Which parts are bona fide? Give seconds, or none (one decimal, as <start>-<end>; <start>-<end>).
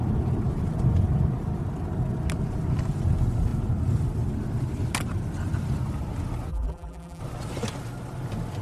0.0-6.5; 7.2-8.6